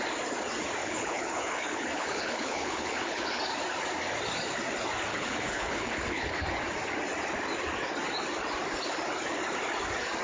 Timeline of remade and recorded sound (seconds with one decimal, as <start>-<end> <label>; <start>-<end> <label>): 0.0-0.8 recorded; 0.8-3.4 remade; 3.4-5.1 recorded; 5.1-6.5 remade; 6.5-10.2 recorded